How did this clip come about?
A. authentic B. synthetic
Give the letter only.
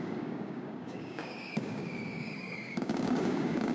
B